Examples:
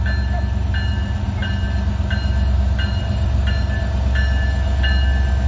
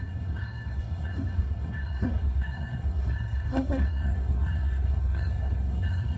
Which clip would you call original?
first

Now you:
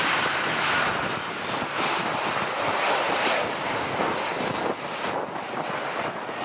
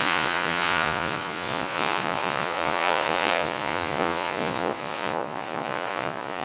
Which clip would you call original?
first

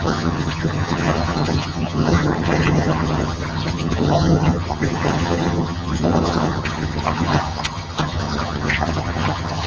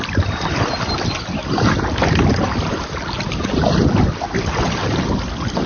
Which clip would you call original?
second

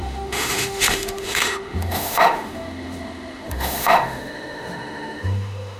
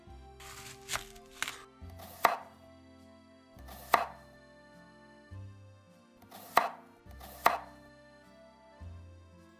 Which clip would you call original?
second